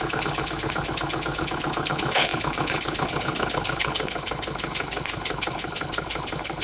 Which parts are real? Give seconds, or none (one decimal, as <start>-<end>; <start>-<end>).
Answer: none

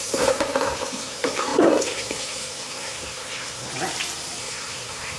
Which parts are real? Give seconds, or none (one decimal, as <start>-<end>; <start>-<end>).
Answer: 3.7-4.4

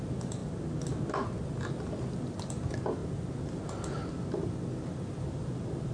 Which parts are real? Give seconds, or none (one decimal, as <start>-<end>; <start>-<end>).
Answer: 0.0-5.9